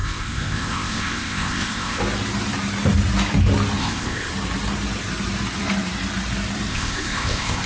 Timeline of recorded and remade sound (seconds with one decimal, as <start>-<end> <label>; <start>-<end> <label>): 0.0-2.0 remade; 2.0-3.8 recorded; 3.8-4.3 remade; 4.3-6.7 recorded; 6.7-7.7 remade

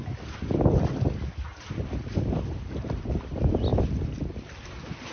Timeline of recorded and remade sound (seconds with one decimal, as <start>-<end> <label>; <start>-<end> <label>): 0.0-5.1 recorded

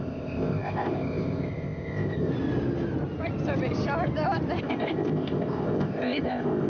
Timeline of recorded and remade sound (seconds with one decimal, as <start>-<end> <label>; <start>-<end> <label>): 0.0-2.3 remade; 2.3-4.6 recorded; 4.6-6.7 remade